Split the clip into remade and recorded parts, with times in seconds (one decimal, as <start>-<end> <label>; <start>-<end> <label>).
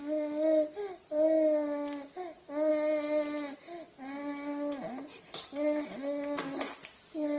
0.0-7.4 recorded